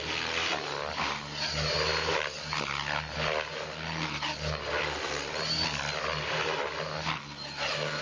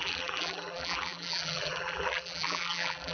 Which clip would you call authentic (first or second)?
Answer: first